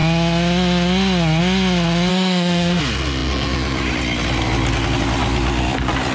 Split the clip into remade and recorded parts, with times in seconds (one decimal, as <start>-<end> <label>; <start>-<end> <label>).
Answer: 0.0-2.1 recorded; 2.1-2.8 remade; 2.8-6.1 recorded